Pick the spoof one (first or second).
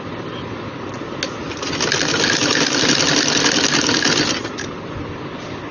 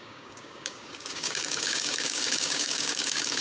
second